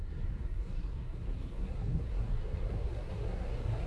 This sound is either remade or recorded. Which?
remade